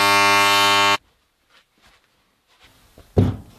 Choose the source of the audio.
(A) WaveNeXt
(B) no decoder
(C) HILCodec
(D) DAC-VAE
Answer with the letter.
B